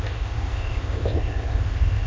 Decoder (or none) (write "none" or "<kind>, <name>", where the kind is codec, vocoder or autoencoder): codec, ZipCodec